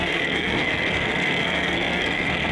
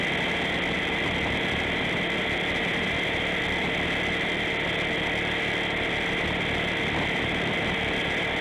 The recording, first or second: second